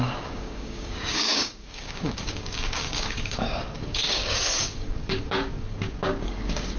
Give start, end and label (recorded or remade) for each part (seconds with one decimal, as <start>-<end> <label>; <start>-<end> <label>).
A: 0.0-6.8 remade

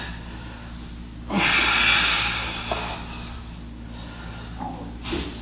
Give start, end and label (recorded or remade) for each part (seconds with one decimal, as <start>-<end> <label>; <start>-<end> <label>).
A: 0.0-2.1 recorded; 2.1-2.9 remade; 2.9-5.4 recorded